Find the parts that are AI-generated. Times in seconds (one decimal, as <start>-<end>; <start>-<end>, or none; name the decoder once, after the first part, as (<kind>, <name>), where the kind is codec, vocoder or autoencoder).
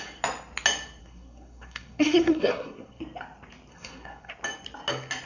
1.0-3.0 (codec, SNAC); 3.7-4.3